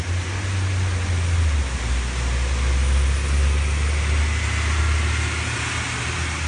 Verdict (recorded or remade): recorded